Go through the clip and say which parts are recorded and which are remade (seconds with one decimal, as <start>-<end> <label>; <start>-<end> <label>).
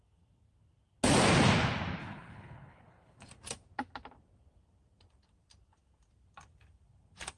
0.0-2.0 recorded; 2.0-3.3 remade; 3.3-7.4 recorded